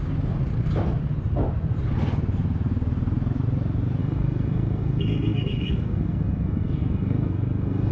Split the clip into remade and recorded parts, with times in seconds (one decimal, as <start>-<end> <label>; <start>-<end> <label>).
0.0-4.0 recorded; 4.0-7.9 remade